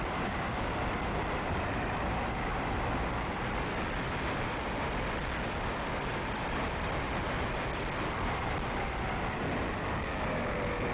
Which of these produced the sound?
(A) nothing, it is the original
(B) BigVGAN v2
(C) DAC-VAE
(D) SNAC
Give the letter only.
A